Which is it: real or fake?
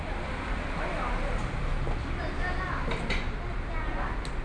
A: real